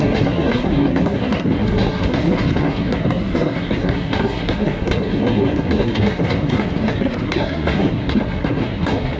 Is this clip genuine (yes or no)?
no